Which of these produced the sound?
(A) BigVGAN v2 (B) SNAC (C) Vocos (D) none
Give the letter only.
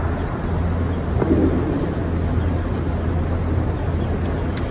D